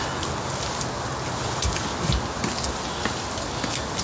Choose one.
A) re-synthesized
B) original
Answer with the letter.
B